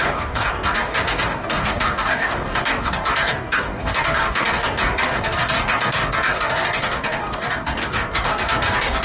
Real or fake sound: fake